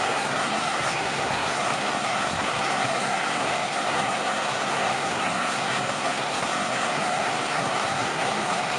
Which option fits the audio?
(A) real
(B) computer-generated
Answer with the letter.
B